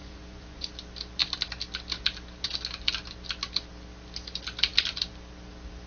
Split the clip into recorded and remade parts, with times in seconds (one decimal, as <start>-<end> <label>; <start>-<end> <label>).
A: 0.0-0.7 remade; 0.7-5.9 recorded